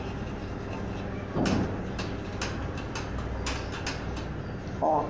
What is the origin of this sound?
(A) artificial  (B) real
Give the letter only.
B